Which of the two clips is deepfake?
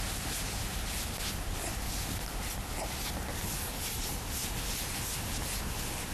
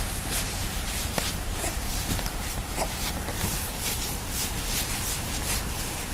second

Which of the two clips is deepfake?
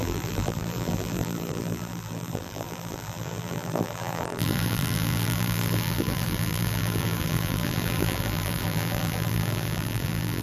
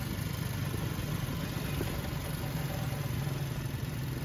first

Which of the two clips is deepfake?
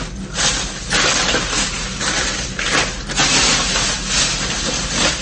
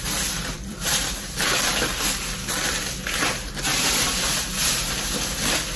second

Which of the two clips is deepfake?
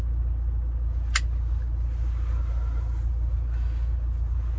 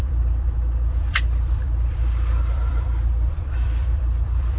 second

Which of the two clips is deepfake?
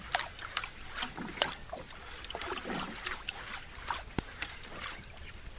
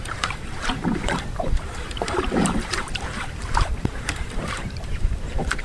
second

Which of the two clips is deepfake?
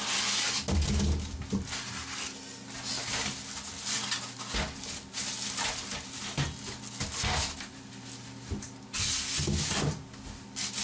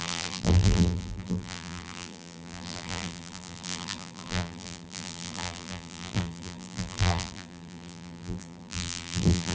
second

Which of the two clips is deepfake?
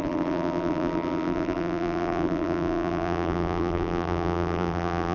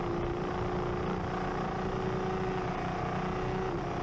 first